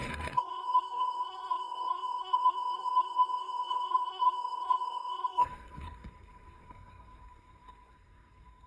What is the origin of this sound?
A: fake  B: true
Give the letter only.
A